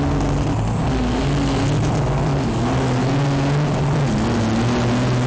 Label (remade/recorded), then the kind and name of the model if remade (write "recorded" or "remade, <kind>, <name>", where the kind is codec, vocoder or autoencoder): recorded